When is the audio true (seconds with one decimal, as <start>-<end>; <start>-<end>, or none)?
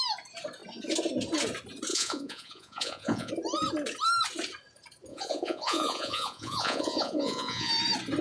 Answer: 0.0-1.9; 3.3-5.1; 7.7-8.2